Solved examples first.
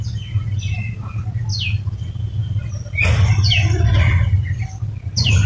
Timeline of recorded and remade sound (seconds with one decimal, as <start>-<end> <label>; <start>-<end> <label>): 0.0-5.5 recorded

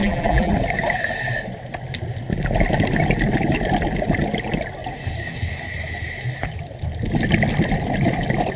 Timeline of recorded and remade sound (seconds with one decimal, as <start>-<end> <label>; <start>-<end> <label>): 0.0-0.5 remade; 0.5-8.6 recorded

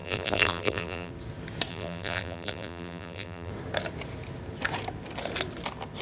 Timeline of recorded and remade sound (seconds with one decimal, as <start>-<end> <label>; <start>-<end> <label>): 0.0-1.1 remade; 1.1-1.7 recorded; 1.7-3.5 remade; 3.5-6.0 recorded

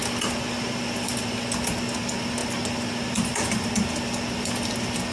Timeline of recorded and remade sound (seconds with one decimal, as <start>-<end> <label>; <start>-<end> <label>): 0.0-1.7 remade; 1.7-5.1 recorded

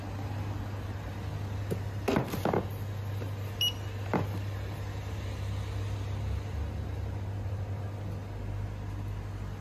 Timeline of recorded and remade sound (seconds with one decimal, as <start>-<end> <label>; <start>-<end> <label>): 0.0-9.6 recorded